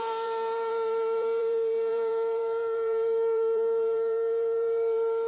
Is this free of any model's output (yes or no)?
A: no